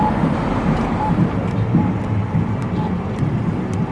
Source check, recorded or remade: remade